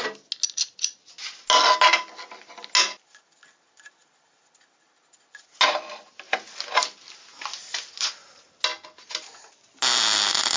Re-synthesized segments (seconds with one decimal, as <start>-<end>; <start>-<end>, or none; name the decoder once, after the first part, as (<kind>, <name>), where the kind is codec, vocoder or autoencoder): none